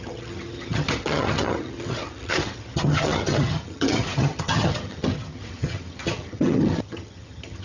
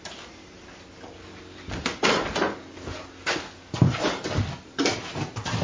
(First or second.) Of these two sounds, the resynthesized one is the first